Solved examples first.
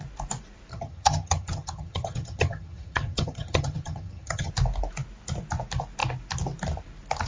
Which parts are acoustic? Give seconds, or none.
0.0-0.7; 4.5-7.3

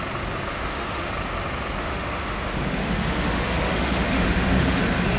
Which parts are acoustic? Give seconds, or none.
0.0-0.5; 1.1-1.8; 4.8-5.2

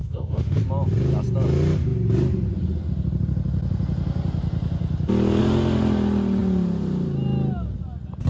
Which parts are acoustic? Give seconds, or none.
0.6-8.3